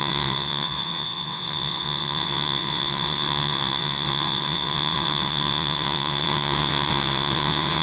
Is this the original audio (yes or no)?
no